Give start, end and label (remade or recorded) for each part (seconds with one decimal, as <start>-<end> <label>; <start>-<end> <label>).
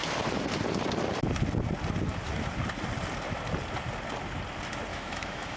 0.0-4.9 recorded; 4.9-5.6 remade